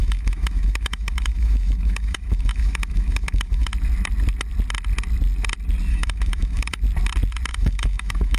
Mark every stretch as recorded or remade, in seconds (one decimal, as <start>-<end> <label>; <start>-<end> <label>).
0.0-3.7 remade; 3.7-5.9 recorded; 5.9-6.8 remade; 6.8-7.5 recorded; 7.5-8.4 remade